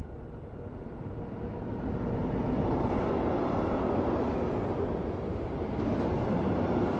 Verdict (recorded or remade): recorded